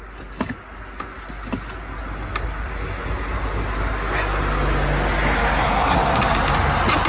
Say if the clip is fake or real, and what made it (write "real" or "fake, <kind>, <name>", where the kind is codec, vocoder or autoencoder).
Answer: real